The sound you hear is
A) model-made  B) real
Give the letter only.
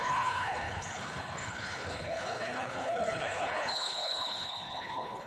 A